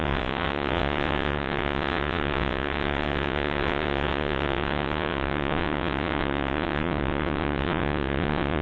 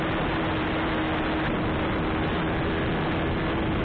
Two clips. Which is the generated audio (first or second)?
first